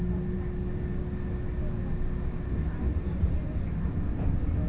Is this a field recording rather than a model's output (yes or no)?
yes